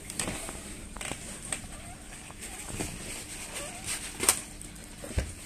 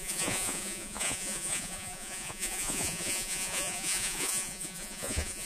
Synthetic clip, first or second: second